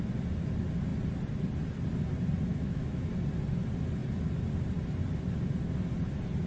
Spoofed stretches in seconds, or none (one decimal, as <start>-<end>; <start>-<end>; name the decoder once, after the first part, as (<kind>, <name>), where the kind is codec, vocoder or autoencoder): 2.5-3.1 (autoencoder, DAC-VAE)